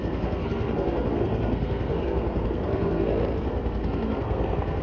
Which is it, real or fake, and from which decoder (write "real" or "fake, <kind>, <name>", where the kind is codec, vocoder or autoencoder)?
fake, codec, SNAC